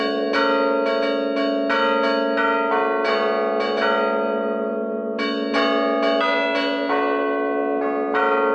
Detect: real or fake real